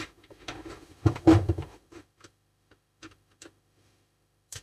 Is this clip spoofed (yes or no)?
yes